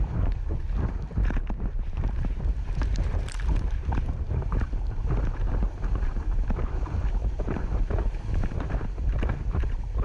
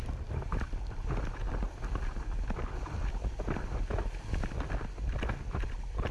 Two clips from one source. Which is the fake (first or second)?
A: first